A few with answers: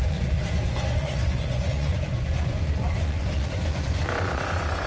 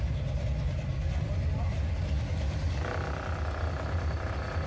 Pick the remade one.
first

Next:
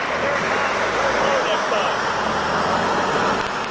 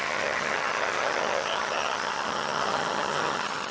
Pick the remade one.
second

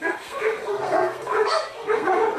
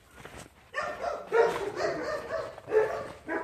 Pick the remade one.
first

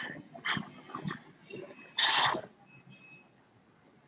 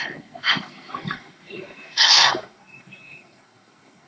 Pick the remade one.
second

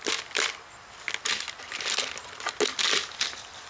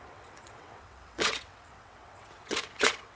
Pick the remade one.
second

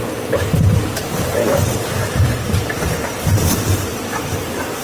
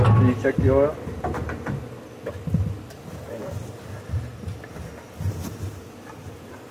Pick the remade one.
first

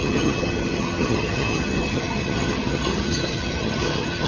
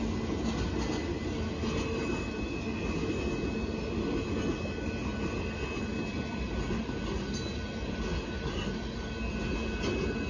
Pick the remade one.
first